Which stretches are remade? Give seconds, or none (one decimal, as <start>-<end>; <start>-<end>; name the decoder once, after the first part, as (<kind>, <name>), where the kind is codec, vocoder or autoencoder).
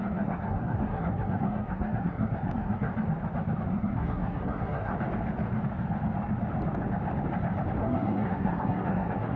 0.0-2.9 (codec, SNAC); 3.7-4.9; 7.8-9.4